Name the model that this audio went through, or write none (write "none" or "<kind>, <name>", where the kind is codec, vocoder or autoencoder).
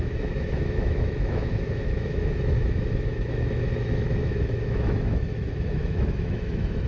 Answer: autoencoder, DAC-VAE